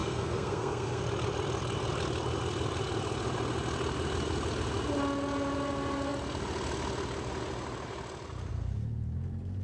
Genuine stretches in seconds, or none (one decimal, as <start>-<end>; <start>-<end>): 1.0-9.6